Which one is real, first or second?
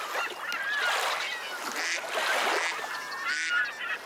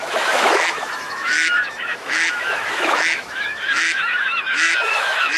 first